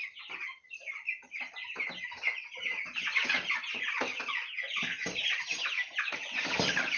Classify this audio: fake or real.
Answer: real